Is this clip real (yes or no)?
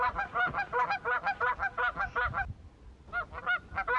yes